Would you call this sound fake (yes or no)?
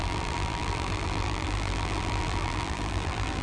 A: yes